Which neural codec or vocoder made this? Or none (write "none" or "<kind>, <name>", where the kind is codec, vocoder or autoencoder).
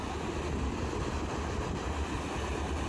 none